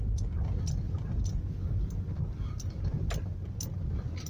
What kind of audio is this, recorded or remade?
recorded